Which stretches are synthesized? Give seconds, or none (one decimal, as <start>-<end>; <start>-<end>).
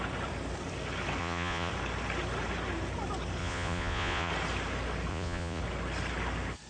1.2-1.7; 3.4-4.3; 5.1-5.6